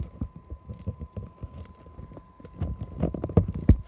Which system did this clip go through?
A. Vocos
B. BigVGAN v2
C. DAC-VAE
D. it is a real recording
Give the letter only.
D